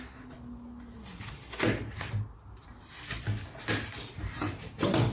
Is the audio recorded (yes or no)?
yes